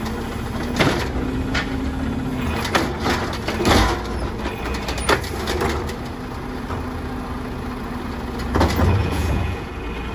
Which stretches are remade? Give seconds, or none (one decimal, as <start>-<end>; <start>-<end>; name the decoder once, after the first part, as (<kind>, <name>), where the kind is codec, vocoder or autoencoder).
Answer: 9.0-9.7 (vocoder, Vocos)